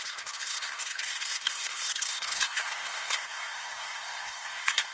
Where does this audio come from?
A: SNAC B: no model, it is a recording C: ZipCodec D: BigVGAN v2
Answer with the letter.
A